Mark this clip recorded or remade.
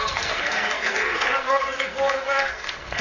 remade